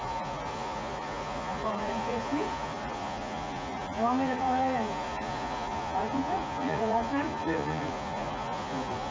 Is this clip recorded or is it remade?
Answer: remade